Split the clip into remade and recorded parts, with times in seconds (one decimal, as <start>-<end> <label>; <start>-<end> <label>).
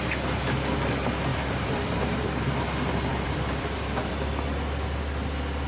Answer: 0.0-1.3 recorded; 1.3-2.0 remade; 2.0-3.1 recorded; 3.1-4.1 remade; 4.1-5.7 recorded